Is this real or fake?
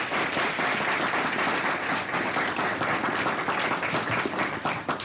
real